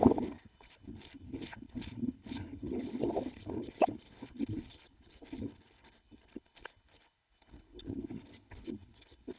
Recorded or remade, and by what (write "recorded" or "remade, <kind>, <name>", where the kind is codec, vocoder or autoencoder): remade, codec, HILCodec